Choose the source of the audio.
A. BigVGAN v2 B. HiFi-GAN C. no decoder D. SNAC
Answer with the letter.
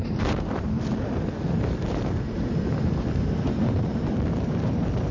A